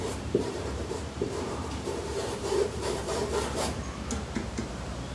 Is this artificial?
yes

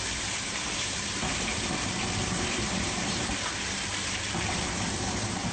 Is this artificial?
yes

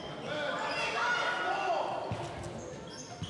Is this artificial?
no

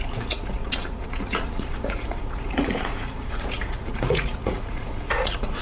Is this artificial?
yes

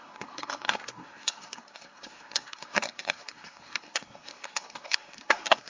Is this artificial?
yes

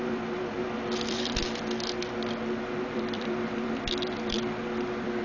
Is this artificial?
yes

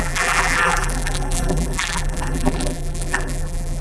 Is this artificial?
yes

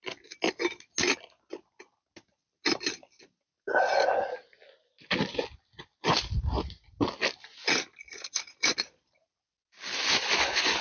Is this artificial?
no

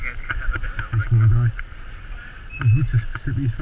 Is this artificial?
no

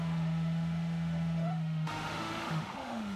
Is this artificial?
yes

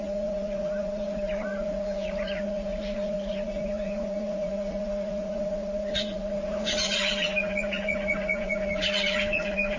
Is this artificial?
yes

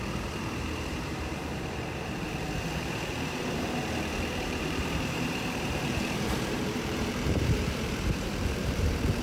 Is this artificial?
yes